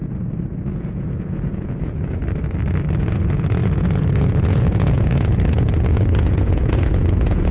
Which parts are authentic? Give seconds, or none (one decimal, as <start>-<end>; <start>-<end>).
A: 0.0-0.7; 2.2-3.0